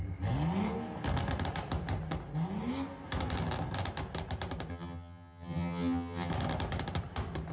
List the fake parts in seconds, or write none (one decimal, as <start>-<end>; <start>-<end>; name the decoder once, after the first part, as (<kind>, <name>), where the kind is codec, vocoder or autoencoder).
4.7-6.3 (vocoder, HiFi-GAN)